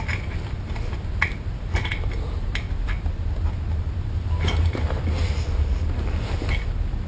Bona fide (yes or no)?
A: yes